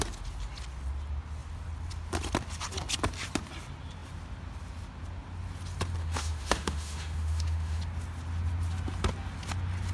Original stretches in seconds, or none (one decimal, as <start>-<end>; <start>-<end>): 0.0-6.0; 7.8-9.9